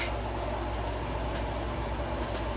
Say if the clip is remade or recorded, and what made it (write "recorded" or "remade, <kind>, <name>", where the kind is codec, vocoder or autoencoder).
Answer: recorded